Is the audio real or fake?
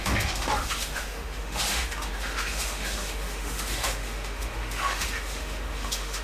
fake